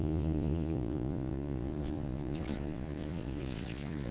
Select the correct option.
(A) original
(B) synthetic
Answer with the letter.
B